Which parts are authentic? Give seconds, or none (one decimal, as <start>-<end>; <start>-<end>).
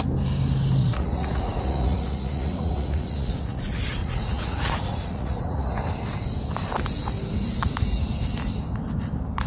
0.0-0.8; 3.6-4.0; 5.8-9.5